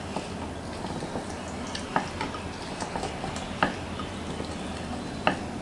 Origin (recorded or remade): recorded